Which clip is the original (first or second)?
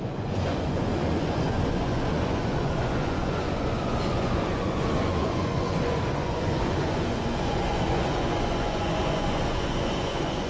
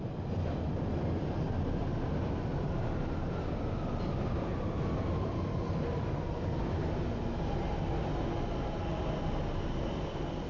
second